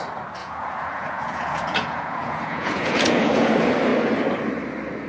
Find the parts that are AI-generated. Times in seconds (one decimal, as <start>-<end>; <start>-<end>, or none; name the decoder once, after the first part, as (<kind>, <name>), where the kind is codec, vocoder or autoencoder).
0.4-3.5 (vocoder, Vocos)